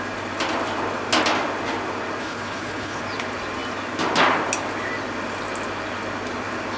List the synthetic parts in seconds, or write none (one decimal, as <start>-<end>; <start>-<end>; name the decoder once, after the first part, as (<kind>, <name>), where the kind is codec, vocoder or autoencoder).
2.2-3.0 (codec, HILCodec)